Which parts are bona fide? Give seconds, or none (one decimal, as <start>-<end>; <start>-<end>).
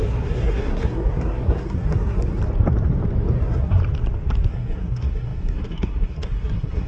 2.4-3.4; 3.8-4.5